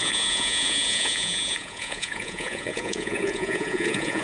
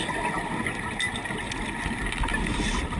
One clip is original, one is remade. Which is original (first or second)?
second